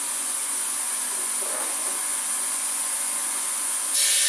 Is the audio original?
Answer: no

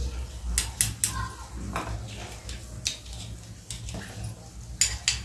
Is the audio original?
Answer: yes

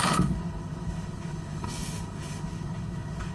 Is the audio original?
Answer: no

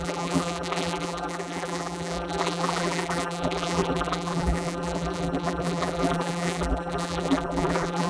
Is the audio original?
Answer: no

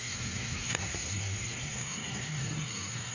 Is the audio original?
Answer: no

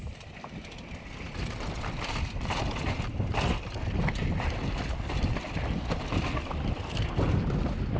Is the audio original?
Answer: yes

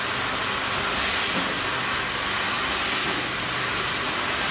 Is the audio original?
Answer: yes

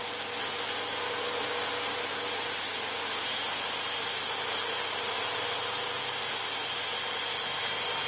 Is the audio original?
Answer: yes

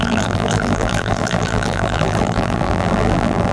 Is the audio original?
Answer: no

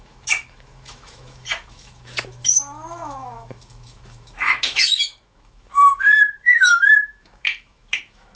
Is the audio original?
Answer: no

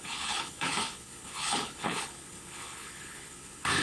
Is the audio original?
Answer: no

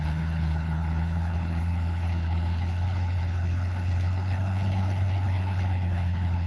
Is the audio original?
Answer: no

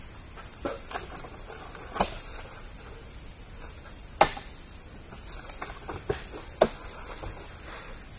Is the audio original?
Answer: yes